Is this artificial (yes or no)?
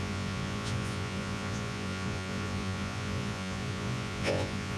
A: yes